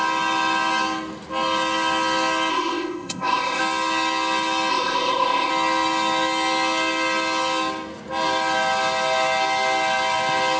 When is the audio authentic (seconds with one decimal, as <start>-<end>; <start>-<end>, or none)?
0.0-2.5; 3.6-4.7; 5.5-10.6